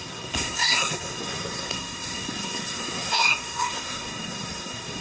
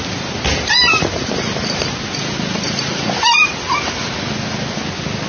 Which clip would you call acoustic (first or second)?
second